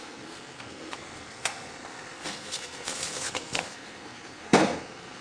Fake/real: fake